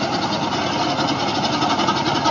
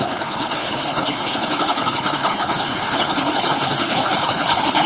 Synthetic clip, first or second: second